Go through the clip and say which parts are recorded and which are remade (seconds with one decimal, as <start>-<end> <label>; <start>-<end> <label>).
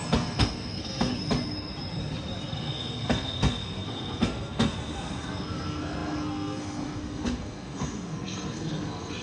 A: 0.0-1.1 remade; 1.1-2.5 recorded; 2.5-9.2 remade